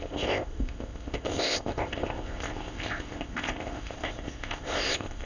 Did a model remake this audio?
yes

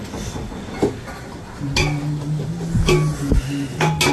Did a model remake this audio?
no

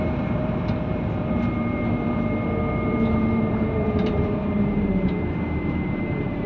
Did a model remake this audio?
yes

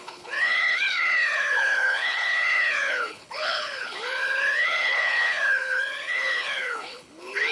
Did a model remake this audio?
yes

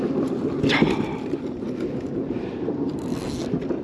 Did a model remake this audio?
no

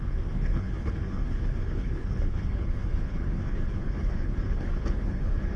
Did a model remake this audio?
yes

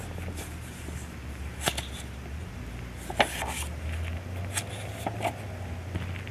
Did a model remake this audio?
yes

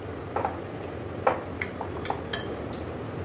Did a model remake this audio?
no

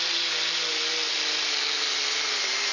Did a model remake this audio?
no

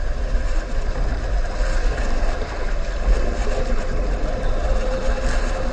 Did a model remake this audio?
no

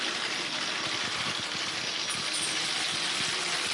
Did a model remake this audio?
no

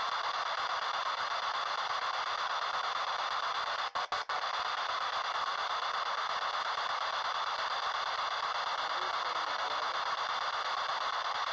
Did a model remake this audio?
no